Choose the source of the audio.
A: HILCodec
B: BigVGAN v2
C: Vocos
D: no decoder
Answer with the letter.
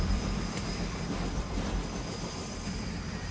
B